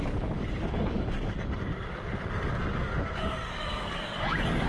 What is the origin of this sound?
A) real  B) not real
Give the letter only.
B